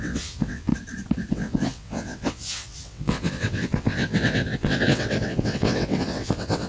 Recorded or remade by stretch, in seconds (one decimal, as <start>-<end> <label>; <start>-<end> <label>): 0.0-0.7 remade; 0.7-1.3 recorded; 1.3-6.7 remade

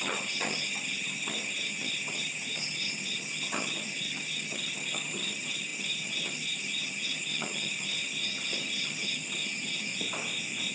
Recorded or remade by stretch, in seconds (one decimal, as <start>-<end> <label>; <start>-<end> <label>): 0.0-9.9 remade; 9.9-10.7 recorded

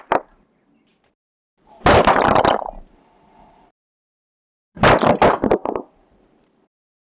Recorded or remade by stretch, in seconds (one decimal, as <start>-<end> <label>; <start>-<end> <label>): 0.0-5.6 recorded; 5.6-7.0 remade

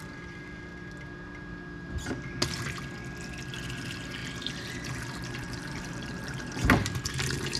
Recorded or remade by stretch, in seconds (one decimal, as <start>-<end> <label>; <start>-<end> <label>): 0.0-0.7 remade; 0.7-3.8 recorded; 3.8-7.6 remade

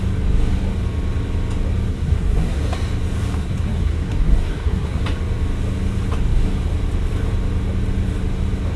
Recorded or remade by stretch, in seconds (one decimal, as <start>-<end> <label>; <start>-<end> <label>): 0.0-1.9 recorded; 1.9-2.6 remade; 2.6-3.4 recorded; 3.4-5.0 remade; 5.0-8.8 recorded

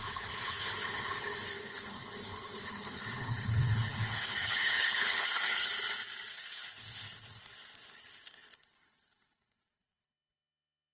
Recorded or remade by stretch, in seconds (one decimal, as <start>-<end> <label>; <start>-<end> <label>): 0.0-5.7 remade; 5.7-6.3 recorded; 6.3-10.9 remade

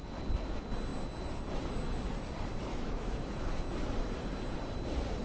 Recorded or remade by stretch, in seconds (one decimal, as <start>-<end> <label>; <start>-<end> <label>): 0.0-2.7 recorded; 2.7-3.5 remade; 3.5-5.2 recorded